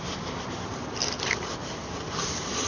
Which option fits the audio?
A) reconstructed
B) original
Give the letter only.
A